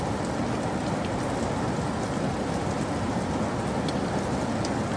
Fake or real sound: real